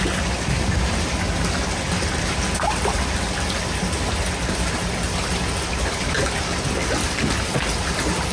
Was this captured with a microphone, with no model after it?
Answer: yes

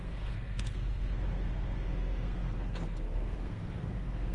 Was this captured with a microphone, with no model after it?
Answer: no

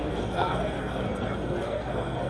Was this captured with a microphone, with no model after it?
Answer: no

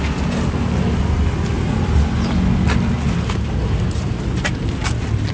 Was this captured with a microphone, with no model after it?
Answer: yes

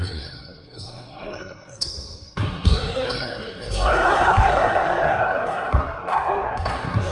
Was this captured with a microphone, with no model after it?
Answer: no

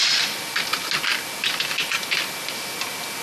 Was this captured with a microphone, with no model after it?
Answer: yes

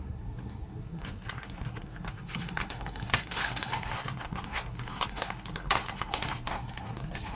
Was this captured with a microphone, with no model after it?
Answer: no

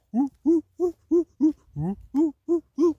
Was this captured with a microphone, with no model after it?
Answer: yes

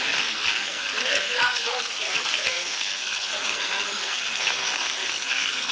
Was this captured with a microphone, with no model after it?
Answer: no